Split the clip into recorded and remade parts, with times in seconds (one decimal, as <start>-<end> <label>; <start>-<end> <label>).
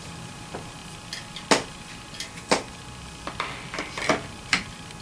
0.0-5.0 recorded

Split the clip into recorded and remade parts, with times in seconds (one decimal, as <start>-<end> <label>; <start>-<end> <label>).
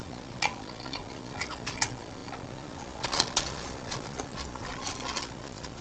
0.0-5.8 remade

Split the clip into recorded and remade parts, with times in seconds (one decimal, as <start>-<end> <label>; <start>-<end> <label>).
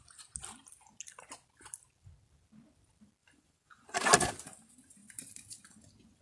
0.0-3.2 recorded; 3.2-4.0 remade; 4.0-6.2 recorded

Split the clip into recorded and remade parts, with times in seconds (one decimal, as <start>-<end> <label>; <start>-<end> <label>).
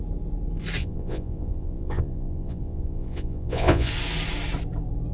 0.0-0.8 recorded; 0.8-3.9 remade; 3.9-5.1 recorded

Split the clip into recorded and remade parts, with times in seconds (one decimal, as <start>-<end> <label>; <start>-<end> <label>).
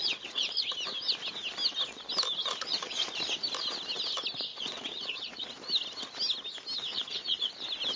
0.0-0.6 remade; 0.6-2.4 recorded; 2.4-3.2 remade; 3.2-4.5 recorded; 4.5-5.5 remade; 5.5-6.9 recorded; 6.9-7.5 remade; 7.5-8.0 recorded